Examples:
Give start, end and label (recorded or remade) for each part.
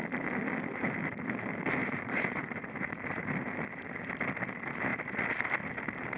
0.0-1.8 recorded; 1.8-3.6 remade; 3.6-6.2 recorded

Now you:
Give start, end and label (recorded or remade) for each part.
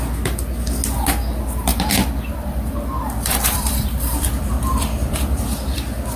0.0-1.7 recorded; 1.7-5.4 remade; 5.4-6.2 recorded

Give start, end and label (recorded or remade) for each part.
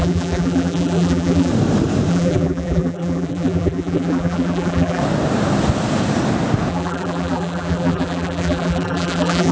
0.0-1.5 remade; 1.5-2.1 recorded; 2.1-5.0 remade; 5.0-6.7 recorded; 6.7-9.5 remade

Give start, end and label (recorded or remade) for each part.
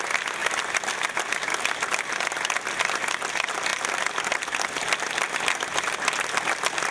0.0-0.4 recorded; 0.4-0.9 remade; 0.9-1.5 recorded; 1.5-2.2 remade; 2.2-6.9 recorded